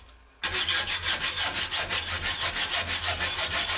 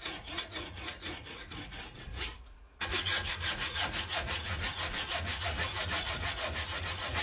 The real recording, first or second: first